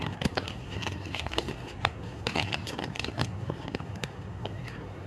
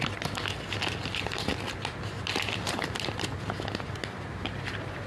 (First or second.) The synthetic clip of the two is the first